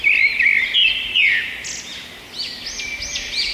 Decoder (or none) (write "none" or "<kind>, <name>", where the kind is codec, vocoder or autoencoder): none